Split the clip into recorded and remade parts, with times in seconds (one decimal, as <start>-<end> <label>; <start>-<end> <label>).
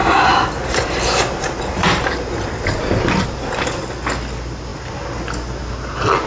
0.0-3.8 remade; 3.8-6.3 recorded